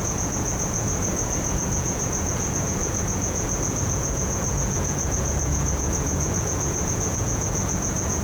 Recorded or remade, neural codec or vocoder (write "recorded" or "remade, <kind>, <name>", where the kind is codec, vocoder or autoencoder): remade, vocoder, Vocos